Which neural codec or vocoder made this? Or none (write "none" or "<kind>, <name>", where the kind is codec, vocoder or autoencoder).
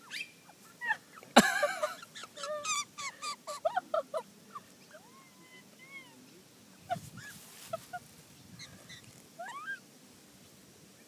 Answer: none